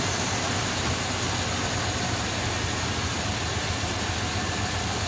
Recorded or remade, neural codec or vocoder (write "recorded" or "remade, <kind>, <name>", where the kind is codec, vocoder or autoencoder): recorded